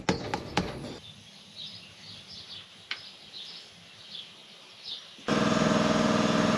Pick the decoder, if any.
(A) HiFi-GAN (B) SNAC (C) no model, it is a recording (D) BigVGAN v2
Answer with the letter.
C